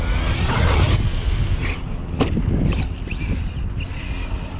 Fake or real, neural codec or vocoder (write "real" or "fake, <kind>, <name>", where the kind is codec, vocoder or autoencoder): real